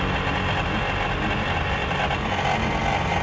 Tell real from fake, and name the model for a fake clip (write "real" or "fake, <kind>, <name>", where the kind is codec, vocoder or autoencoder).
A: real